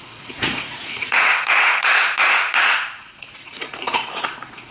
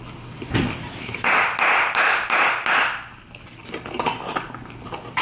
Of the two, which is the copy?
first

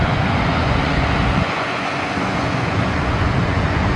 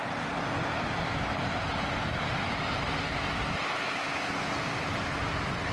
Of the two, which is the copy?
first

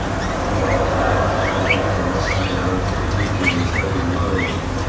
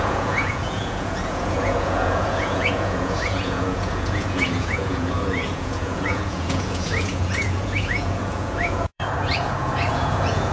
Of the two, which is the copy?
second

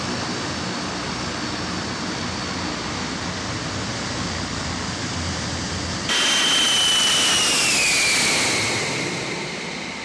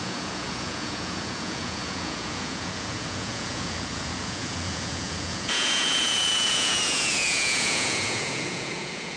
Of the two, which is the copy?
second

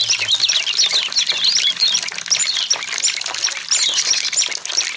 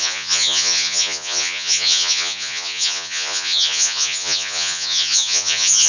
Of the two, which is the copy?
second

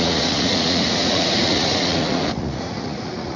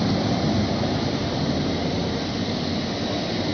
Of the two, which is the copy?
first